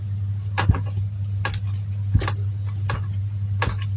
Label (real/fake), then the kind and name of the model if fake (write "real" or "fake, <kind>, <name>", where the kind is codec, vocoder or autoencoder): real